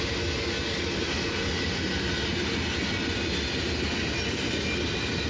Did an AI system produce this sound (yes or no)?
no